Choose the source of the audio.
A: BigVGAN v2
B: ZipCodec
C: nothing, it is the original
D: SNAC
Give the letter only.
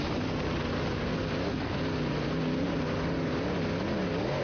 C